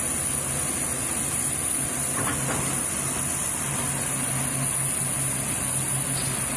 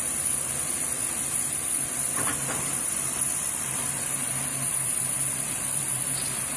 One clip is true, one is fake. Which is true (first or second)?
first